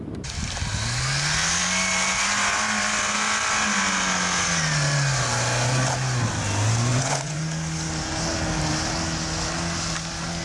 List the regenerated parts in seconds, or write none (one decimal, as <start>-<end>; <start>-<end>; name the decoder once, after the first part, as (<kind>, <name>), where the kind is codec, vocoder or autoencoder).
6.9-7.4 (vocoder, Vocos)